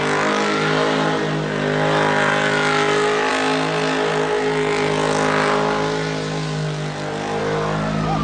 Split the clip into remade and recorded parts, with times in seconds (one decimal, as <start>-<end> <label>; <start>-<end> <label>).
0.0-8.2 recorded